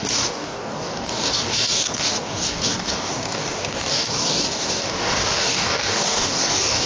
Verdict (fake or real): fake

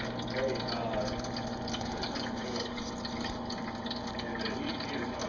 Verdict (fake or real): real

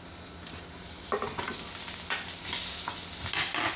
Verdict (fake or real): real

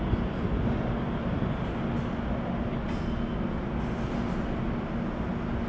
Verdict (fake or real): real